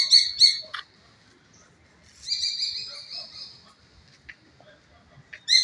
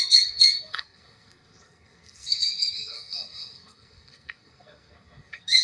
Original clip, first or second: first